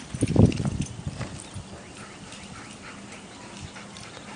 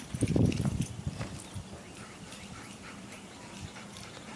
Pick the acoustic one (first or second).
first